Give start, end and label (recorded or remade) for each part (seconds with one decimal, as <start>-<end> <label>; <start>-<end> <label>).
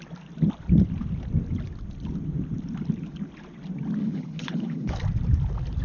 0.0-4.0 recorded; 4.0-4.9 remade; 4.9-5.8 recorded